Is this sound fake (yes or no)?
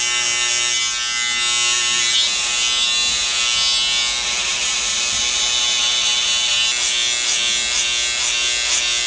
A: no